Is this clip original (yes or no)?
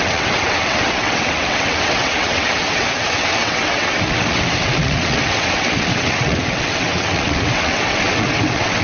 no